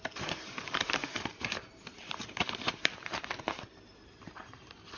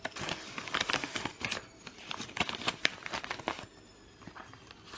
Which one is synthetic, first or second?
first